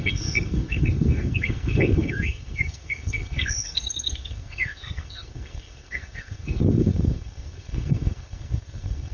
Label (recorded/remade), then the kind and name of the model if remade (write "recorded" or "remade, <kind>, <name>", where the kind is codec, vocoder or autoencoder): remade, codec, SNAC